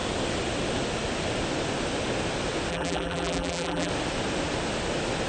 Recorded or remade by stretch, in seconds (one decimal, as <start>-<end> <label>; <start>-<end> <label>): 0.0-2.7 recorded; 2.7-3.9 remade; 3.9-5.3 recorded